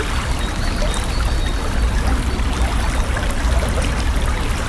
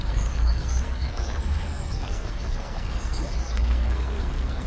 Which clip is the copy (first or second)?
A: second